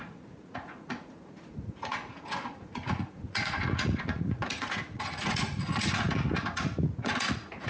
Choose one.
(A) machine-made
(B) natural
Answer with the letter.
A